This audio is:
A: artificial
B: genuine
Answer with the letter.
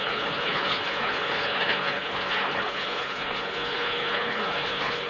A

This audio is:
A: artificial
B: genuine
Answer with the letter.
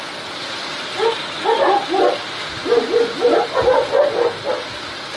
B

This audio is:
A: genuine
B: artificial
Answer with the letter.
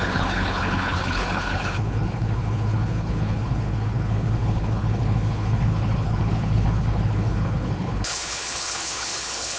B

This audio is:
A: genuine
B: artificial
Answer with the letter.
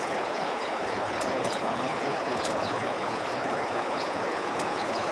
B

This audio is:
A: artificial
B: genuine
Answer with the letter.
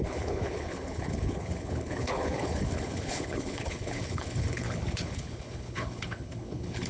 A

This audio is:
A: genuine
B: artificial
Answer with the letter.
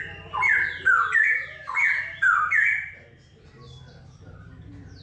A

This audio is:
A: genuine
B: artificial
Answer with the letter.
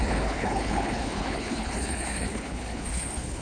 B